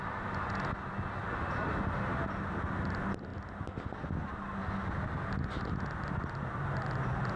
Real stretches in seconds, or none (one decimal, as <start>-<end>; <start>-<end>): 0.0-7.4